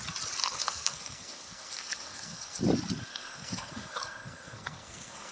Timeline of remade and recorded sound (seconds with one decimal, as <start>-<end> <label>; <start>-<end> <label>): 0.0-0.4 recorded; 0.4-2.6 remade; 2.6-3.1 recorded; 3.1-5.3 remade